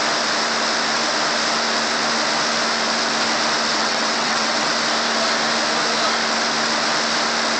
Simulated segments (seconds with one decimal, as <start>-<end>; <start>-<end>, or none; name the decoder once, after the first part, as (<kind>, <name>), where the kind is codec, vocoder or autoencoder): 3.7-4.7 (vocoder, WaveNeXt)